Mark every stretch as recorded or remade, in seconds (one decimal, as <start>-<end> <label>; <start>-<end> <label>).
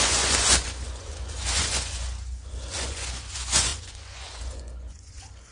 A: 0.0-5.5 remade